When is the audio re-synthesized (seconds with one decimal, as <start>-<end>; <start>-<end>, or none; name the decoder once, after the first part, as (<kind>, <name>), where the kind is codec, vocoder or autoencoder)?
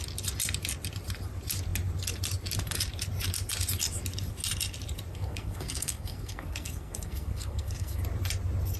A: 5.1-8.0 (codec, SNAC)